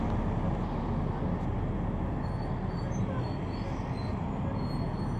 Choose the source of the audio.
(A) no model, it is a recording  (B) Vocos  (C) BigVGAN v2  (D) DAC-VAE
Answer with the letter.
A